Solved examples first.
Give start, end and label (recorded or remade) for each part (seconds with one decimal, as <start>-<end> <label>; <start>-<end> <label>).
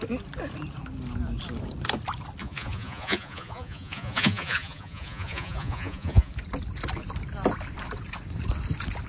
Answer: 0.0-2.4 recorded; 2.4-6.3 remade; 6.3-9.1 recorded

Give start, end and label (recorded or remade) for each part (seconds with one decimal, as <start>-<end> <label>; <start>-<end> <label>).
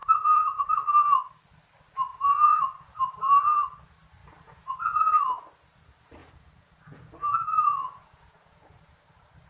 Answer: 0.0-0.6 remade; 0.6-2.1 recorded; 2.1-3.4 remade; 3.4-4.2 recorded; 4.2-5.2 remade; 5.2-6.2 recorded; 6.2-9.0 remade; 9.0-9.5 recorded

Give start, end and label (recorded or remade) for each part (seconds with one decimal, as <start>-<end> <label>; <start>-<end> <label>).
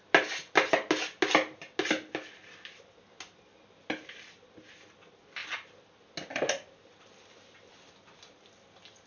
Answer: 0.0-9.1 recorded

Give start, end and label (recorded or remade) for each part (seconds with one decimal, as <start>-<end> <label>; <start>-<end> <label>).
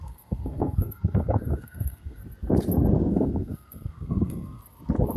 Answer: 0.0-2.2 remade; 2.2-3.0 recorded; 3.0-4.6 remade; 4.6-5.2 recorded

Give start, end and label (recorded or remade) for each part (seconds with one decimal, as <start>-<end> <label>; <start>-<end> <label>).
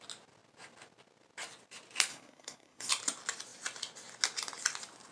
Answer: 0.0-2.1 recorded; 2.1-2.9 remade; 2.9-5.1 recorded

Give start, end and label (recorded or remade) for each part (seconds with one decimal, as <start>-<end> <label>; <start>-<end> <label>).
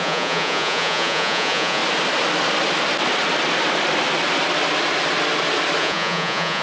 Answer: 0.0-1.8 remade; 1.8-5.8 recorded; 5.8-6.6 remade